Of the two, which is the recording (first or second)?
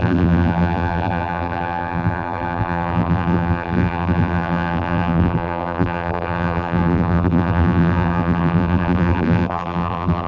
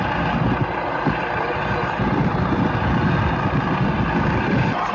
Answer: second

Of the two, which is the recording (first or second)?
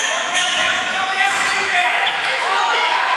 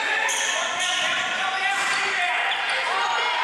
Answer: second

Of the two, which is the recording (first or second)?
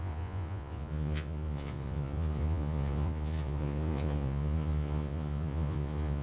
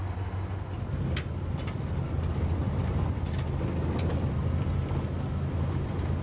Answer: second